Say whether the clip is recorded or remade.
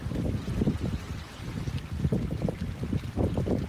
recorded